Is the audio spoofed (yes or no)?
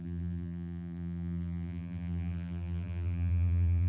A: yes